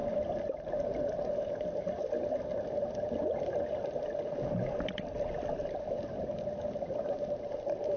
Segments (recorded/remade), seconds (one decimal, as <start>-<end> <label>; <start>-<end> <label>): 0.0-3.2 remade; 3.2-8.0 recorded